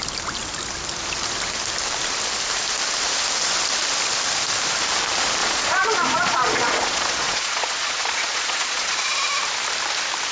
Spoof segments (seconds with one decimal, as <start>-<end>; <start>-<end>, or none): 5.4-8.9